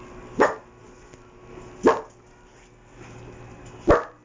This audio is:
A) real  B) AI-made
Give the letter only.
A